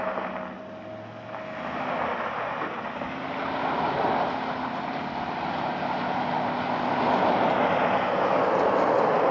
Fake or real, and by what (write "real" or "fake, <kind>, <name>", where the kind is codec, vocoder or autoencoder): real